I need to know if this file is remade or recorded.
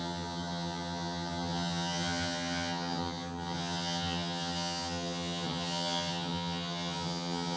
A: remade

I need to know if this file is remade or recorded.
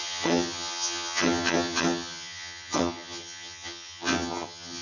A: remade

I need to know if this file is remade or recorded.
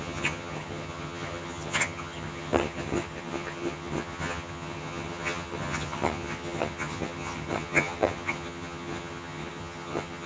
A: remade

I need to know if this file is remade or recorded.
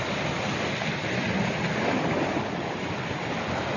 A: recorded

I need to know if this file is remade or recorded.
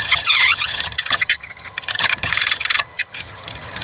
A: remade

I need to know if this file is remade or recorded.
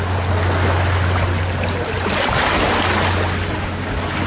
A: recorded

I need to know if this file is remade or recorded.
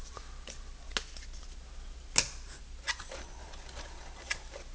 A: recorded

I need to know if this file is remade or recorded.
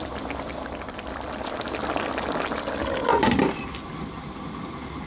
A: recorded